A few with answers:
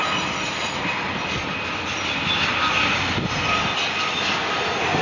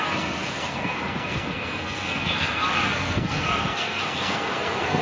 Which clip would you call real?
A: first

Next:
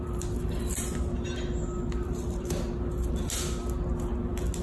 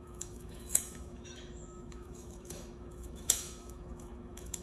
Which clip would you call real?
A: first